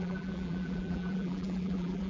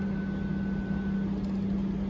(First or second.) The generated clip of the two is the first